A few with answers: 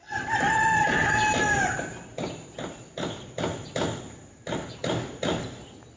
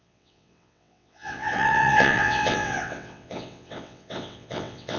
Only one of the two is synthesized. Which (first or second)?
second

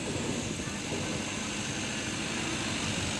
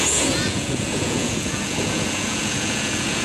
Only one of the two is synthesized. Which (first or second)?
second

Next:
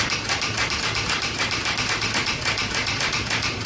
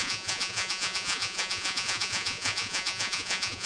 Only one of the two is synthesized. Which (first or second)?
second